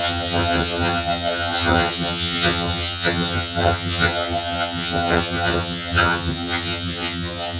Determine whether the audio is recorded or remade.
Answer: remade